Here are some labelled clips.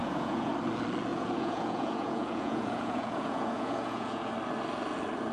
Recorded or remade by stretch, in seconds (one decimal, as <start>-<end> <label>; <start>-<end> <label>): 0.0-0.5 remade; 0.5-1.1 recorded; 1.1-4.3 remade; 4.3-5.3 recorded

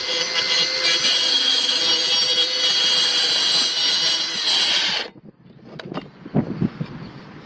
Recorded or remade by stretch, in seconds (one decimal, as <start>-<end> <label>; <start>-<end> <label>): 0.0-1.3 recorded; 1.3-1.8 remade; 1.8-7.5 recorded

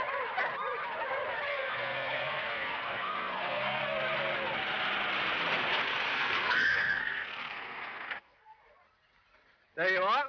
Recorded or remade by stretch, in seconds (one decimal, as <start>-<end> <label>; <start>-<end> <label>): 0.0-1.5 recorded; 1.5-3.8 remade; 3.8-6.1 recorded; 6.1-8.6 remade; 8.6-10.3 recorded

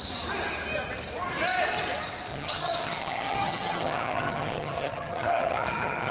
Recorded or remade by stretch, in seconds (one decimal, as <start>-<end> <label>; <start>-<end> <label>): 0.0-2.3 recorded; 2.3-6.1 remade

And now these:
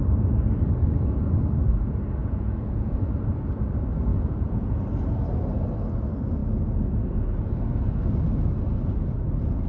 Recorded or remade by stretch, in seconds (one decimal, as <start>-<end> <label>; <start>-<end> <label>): 0.0-2.2 recorded; 2.2-3.0 remade; 3.0-4.1 recorded; 4.1-4.8 remade; 4.8-9.7 recorded

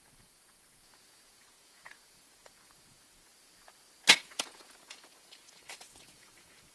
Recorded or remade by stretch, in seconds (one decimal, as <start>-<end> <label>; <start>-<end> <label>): 0.0-3.3 remade; 3.3-4.1 recorded; 4.1-6.7 remade